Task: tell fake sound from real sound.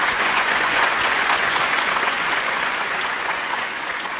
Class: fake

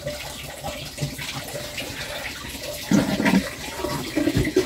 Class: real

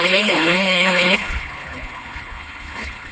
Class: fake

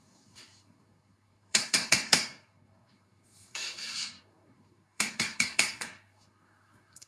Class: fake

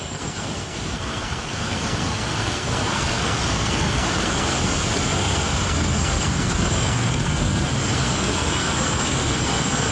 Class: fake